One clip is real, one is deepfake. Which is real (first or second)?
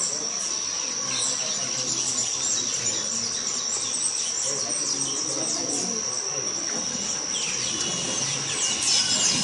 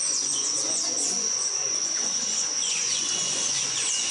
first